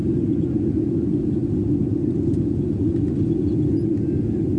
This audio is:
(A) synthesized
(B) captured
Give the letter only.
B